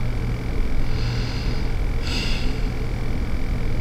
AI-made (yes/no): no